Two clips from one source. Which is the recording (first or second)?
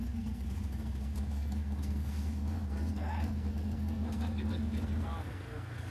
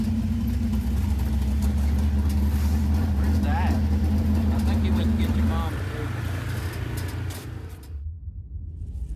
second